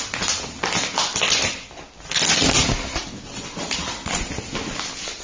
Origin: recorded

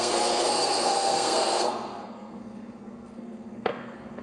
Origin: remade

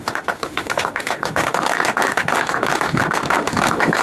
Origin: remade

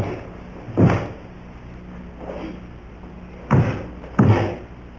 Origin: recorded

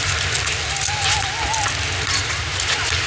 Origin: recorded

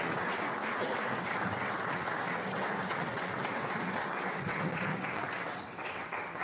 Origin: remade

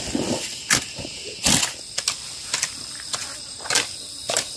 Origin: recorded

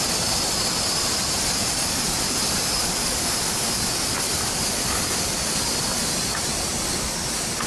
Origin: recorded